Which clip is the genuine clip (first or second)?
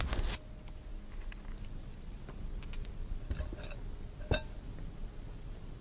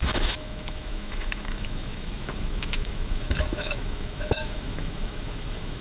first